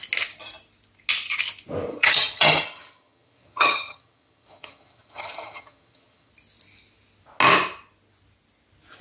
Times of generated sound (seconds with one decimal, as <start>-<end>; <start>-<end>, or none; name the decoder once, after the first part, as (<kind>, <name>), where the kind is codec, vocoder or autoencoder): 1.9-6.3 (vocoder, HiFi-GAN)